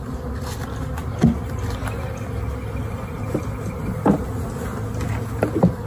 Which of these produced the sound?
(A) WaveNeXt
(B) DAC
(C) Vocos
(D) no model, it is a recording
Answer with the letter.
D